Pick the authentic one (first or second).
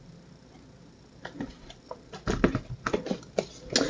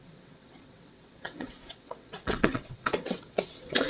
first